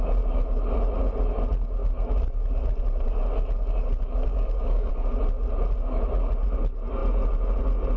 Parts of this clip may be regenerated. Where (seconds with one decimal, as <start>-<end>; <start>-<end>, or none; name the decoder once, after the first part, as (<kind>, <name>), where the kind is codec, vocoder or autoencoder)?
4.3-4.9 (codec, DAC)